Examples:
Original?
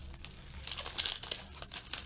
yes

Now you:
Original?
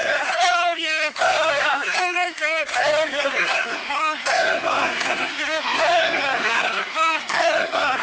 no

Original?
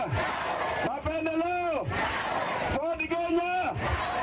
yes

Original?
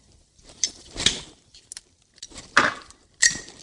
yes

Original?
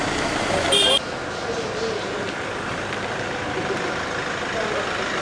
yes